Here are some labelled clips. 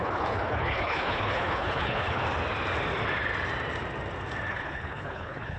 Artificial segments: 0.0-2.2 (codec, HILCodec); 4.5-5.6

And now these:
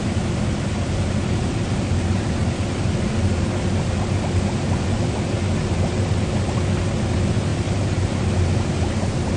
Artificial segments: none